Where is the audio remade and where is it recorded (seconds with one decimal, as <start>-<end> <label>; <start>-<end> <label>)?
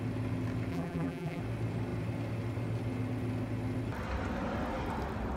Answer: 0.0-0.7 recorded; 0.7-1.4 remade; 1.4-5.4 recorded